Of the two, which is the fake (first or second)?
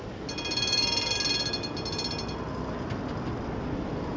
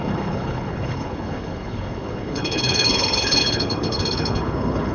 second